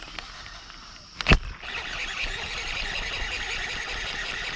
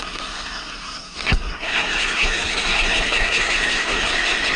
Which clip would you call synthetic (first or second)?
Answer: second